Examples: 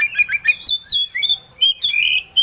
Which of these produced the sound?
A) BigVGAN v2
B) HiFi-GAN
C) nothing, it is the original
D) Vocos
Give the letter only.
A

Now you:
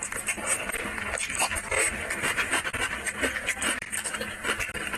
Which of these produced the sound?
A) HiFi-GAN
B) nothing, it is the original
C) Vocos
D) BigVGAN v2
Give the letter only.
B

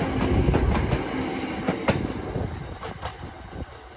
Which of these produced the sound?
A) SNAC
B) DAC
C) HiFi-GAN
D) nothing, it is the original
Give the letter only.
D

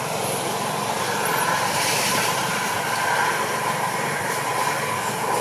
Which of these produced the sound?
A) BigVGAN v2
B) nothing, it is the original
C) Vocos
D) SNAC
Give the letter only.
B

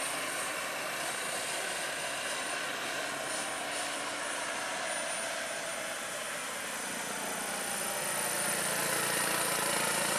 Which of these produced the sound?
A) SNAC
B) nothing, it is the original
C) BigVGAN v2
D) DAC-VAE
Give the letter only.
B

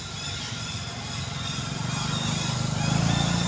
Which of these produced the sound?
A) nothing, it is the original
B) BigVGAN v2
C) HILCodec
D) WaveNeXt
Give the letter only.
A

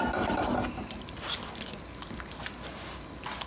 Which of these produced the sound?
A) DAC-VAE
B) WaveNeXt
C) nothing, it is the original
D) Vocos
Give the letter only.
C